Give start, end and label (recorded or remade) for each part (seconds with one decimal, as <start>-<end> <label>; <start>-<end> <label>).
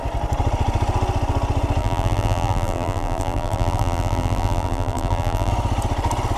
0.0-1.8 recorded; 1.8-5.5 remade; 5.5-6.4 recorded